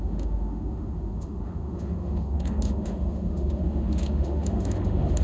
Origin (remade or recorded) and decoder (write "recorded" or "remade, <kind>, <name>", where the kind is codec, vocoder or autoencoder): remade, autoencoder, DAC-VAE